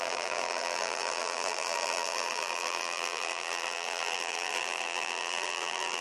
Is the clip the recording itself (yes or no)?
no